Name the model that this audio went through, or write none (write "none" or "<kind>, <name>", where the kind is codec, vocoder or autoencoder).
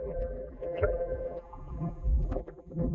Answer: vocoder, BigVGAN v2